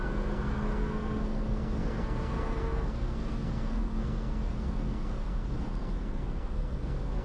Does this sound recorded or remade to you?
remade